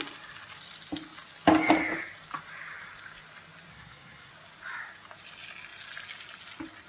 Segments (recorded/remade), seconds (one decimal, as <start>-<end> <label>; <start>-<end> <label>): 0.0-3.7 recorded; 3.7-4.3 remade; 4.3-6.9 recorded